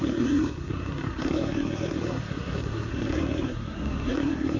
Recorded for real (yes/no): no